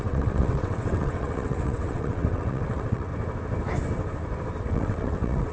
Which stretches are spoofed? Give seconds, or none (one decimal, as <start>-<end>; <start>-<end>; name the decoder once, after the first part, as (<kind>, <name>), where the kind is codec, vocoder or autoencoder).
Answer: 0.0-3.1 (vocoder, WaveNeXt); 4.6-5.5